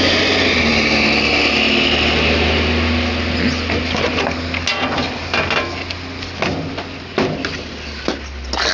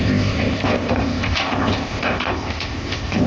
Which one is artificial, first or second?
second